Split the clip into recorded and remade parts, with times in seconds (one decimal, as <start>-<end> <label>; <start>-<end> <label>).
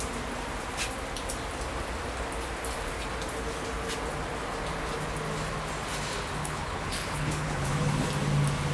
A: 0.0-6.4 recorded; 6.4-7.9 remade; 7.9-8.7 recorded